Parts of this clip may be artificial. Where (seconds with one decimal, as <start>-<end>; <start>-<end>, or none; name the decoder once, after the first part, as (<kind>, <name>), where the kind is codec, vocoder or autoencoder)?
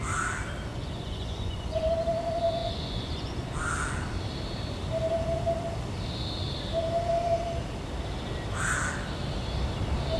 0.7-1.9 (vocoder, Vocos); 2.6-3.5